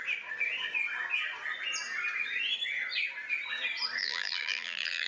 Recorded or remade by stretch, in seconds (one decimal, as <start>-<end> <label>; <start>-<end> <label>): 0.0-4.0 recorded; 4.0-5.1 remade